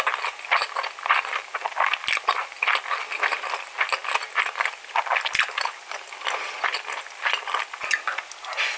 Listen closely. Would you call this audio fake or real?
real